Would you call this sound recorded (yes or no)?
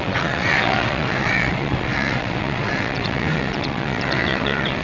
no